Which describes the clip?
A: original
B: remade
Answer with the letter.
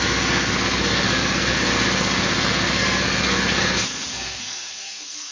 B